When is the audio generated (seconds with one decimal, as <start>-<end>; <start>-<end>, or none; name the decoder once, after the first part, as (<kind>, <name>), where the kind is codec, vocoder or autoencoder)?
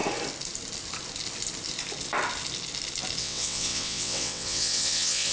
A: 3.2-5.3 (vocoder, WaveNeXt)